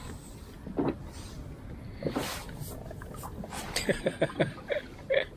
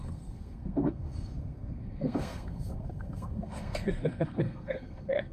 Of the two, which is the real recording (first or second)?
first